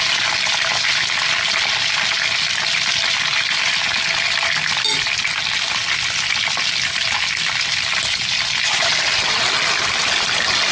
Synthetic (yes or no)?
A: no